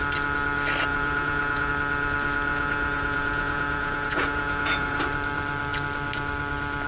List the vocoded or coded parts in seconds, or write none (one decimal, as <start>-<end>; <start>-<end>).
0.9-1.7; 2.5-5.0

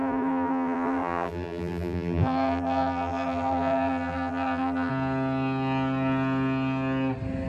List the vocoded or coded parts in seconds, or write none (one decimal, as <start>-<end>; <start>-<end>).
0.0-4.9

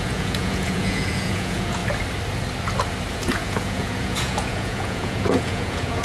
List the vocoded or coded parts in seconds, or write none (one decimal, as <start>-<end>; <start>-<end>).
0.0-1.8; 3.1-6.0